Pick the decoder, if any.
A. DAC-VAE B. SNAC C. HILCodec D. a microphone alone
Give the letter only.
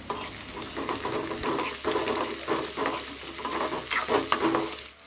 D